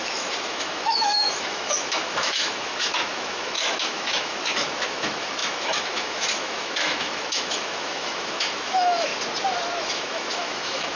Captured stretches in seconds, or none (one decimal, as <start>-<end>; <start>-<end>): 9.1-9.9